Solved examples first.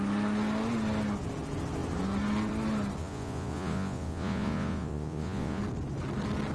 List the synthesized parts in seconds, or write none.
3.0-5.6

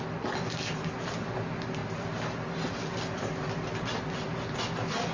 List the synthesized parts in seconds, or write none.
none

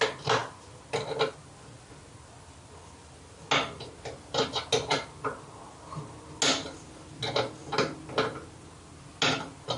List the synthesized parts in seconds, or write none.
none

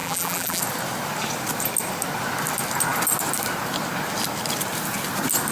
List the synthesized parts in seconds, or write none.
0.0-0.6

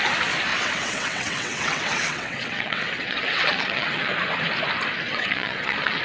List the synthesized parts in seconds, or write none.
0.5-4.1; 5.1-6.0

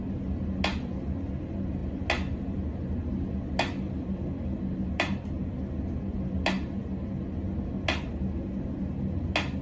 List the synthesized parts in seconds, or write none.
none